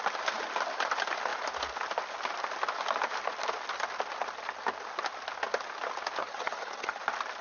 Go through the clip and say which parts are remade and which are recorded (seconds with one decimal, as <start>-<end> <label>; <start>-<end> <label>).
0.0-6.2 recorded; 6.2-7.0 remade; 7.0-7.4 recorded